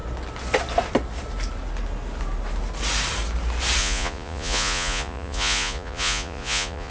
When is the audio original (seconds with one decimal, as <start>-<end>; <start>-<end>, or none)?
0.0-3.8